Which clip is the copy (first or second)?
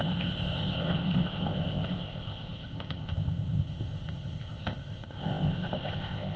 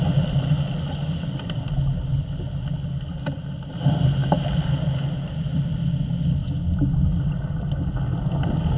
first